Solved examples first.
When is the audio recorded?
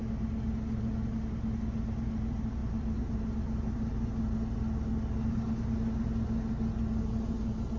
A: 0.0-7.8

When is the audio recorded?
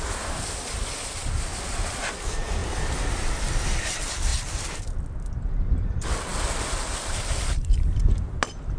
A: 0.0-1.2; 2.0-6.3; 8.0-8.8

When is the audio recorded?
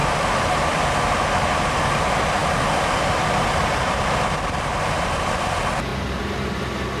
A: 0.0-5.9; 6.6-7.0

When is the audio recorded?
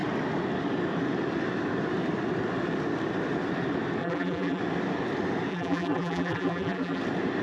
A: 0.0-4.0; 4.6-5.5; 7.0-7.4